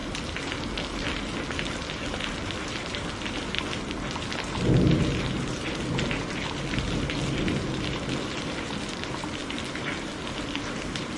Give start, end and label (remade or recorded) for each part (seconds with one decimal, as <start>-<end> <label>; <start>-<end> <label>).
0.0-11.2 recorded